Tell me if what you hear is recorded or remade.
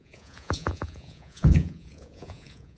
remade